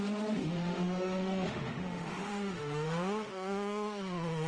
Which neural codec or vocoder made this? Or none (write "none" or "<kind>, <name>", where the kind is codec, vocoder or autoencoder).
autoencoder, DAC-VAE